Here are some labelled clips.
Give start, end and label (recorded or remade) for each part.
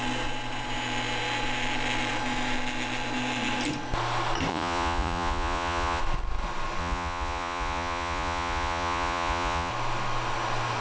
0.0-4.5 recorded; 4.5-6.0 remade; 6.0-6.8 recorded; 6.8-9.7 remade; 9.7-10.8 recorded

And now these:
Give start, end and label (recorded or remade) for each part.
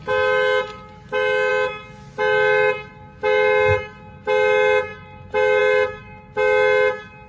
0.0-7.3 recorded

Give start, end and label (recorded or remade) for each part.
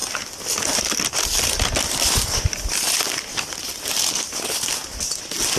0.0-5.6 recorded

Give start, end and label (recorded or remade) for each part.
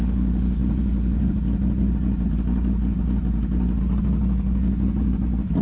0.0-5.6 recorded